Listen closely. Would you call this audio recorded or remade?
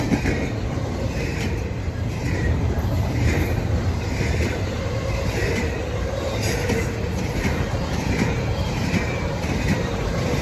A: remade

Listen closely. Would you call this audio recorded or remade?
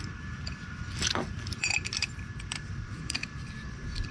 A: remade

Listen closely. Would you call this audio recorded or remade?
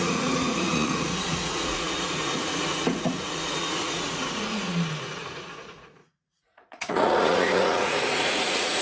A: remade